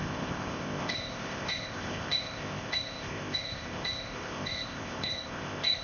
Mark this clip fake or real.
fake